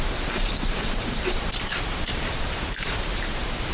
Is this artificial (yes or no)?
yes